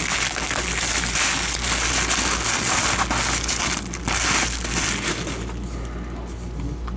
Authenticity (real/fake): real